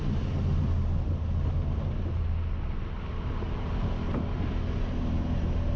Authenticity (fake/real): real